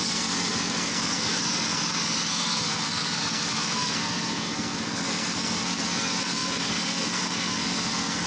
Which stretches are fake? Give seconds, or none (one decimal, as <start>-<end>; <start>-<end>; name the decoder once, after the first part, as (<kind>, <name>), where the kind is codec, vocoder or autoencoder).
0.0-8.3 (codec, SNAC)